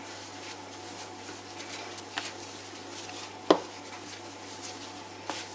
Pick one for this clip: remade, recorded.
recorded